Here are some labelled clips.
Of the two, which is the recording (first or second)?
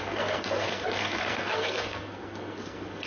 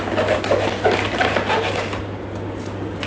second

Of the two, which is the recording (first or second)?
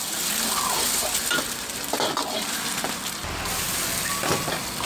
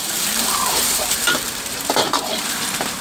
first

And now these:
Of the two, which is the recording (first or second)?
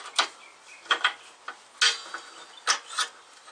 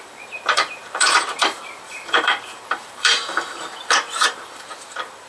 first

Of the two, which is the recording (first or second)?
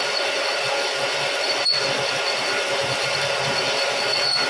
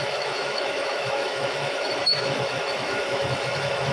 first